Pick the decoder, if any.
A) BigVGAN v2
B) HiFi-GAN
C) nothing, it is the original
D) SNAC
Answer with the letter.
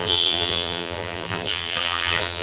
A